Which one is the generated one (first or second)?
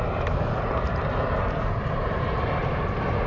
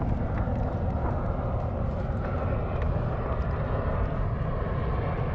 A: first